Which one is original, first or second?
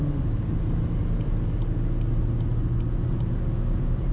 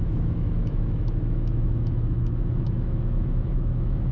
first